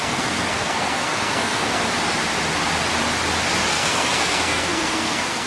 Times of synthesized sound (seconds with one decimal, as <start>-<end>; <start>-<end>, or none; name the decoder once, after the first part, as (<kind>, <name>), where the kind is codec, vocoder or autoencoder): 0.0-1.8 (codec, SNAC); 3.7-5.5